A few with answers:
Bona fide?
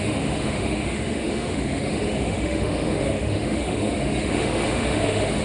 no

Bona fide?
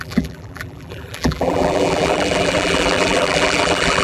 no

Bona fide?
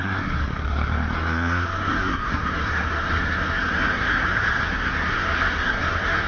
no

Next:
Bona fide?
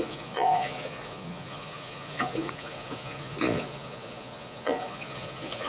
no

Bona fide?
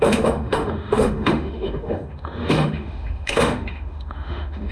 no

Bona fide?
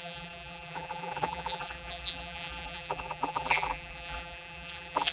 no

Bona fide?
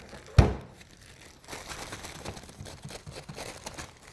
yes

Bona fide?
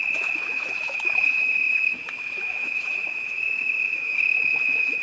no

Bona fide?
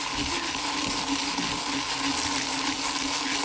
yes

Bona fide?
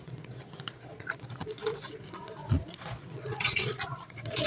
no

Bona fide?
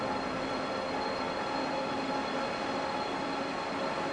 yes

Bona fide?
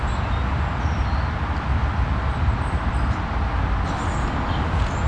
yes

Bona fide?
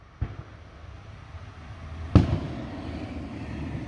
yes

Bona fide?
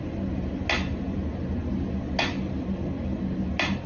yes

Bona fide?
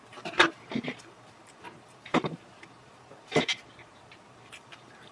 no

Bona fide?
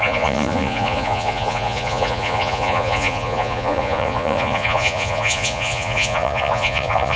no